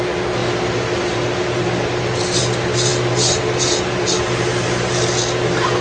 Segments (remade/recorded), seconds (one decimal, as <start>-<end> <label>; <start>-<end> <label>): 0.0-5.8 recorded